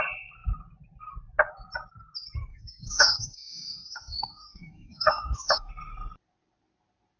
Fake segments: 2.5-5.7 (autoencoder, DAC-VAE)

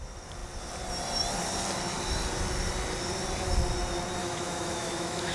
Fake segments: 4.2-5.3 (autoencoder, DAC-VAE)

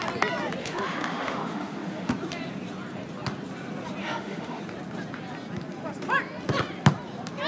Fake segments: 0.6-2.1 (autoencoder, DAC-VAE); 4.0-4.6

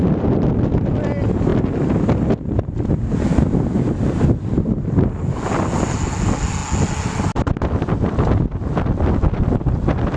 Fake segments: none